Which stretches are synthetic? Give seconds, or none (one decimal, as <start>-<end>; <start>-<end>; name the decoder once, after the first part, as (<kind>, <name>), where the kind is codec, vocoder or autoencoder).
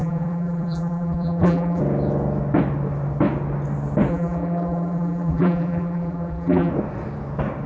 0.0-1.8 (vocoder, BigVGAN v2); 4.1-6.7